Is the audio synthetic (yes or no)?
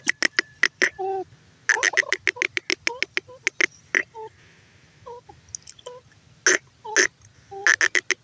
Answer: no